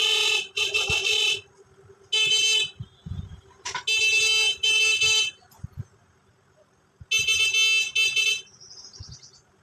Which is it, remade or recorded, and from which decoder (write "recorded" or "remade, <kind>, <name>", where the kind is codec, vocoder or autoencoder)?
recorded